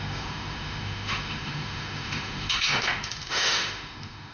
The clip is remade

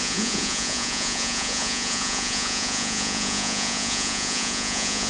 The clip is remade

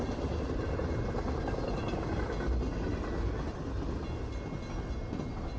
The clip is recorded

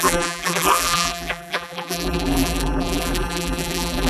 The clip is remade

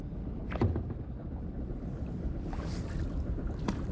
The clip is recorded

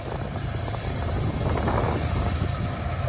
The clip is recorded